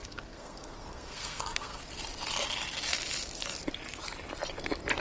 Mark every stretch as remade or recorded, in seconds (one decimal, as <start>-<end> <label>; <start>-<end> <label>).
0.0-1.8 remade; 1.8-5.0 recorded